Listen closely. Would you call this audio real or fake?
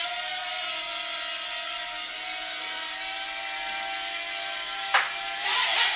real